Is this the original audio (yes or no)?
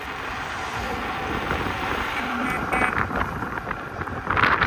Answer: no